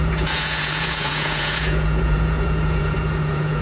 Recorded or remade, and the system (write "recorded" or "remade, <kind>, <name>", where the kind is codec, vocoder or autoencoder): remade, vocoder, Vocos